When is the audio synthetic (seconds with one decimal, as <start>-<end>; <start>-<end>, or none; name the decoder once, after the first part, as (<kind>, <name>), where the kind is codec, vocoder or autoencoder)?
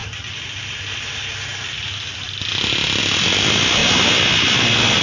none